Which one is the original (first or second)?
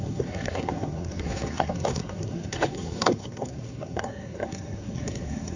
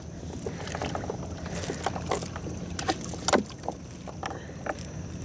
second